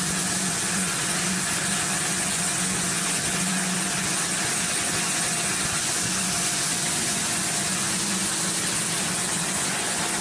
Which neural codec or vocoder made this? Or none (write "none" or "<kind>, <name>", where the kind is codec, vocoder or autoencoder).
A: vocoder, Vocos